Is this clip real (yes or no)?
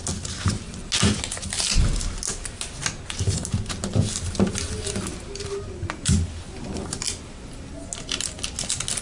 yes